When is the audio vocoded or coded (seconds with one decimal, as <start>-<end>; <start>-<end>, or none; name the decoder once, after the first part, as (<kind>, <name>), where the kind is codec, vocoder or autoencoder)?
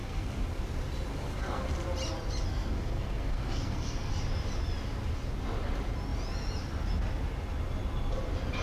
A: 0.0-0.6 (codec, SNAC); 1.1-1.7; 2.5-4.1